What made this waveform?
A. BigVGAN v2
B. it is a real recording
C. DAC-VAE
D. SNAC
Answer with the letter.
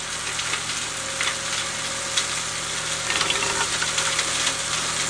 B